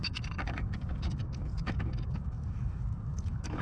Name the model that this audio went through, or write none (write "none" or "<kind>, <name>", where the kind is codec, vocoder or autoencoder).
codec, DAC